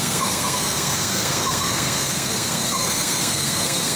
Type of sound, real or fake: fake